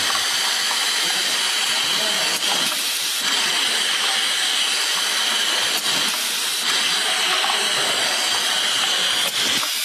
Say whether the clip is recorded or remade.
recorded